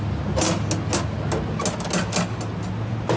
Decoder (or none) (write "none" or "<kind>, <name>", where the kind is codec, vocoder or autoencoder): none